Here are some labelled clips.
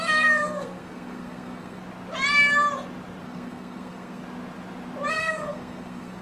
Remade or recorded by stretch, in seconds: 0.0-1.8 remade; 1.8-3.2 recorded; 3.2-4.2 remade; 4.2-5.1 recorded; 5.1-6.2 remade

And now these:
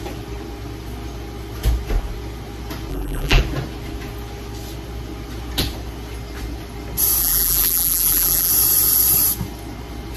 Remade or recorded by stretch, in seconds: 0.0-2.9 recorded; 2.9-3.4 remade; 3.4-7.2 recorded; 7.2-8.5 remade; 8.5-10.2 recorded

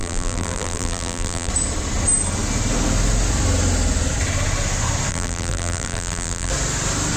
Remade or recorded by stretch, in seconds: 0.0-1.5 remade; 1.5-5.1 recorded; 5.1-6.5 remade; 6.5-7.2 recorded

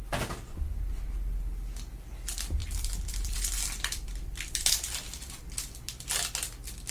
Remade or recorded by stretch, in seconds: 0.0-2.6 recorded; 2.6-6.1 remade; 6.1-6.9 recorded